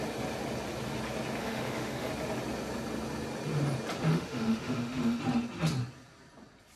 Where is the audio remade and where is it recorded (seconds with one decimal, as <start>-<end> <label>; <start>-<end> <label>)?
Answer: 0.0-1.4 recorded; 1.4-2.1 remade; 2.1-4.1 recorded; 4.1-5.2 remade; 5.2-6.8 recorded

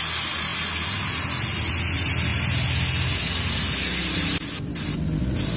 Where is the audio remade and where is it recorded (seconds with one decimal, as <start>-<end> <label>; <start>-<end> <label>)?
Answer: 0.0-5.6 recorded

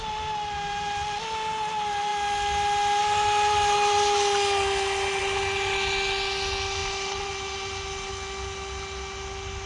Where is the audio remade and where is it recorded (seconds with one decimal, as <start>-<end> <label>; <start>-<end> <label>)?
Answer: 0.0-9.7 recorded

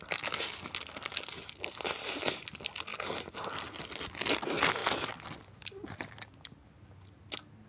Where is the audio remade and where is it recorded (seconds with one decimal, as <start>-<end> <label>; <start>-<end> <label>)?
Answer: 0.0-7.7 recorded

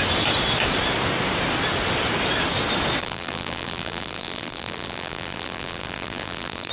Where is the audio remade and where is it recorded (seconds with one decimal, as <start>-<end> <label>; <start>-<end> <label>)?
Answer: 0.0-3.0 recorded; 3.0-6.7 remade

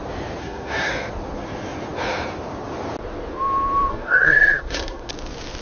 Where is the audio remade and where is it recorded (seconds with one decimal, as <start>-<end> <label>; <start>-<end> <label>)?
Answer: 0.0-0.4 recorded; 0.4-0.9 remade; 0.9-3.9 recorded; 3.9-5.1 remade; 5.1-5.6 recorded

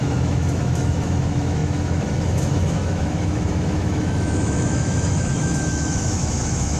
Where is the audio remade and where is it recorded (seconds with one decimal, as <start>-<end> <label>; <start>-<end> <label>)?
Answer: 0.0-6.8 remade